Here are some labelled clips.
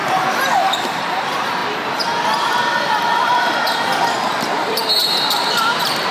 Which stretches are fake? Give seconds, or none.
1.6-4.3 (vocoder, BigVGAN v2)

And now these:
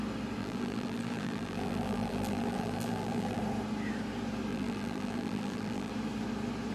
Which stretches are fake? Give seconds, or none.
0.4-3.4 (vocoder, BigVGAN v2); 4.5-5.9

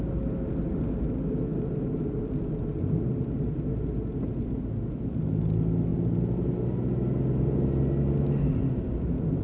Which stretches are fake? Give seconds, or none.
none

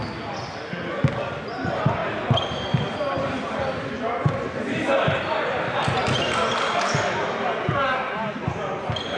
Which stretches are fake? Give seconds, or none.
2.0-3.9 (vocoder, BigVGAN v2)

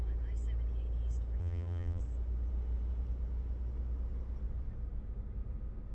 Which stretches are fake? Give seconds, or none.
1.4-2.0 (vocoder, BigVGAN v2)

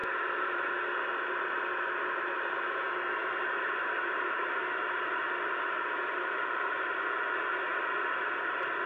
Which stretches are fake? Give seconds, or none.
0.0-0.7 (vocoder, BigVGAN v2); 3.2-5.9; 7.7-8.9

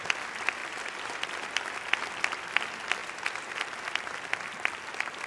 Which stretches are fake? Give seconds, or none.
none